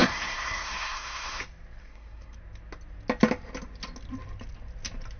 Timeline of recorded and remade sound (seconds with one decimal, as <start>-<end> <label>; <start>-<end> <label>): 0.0-1.4 remade; 1.4-1.8 recorded; 1.8-2.4 remade; 2.4-5.2 recorded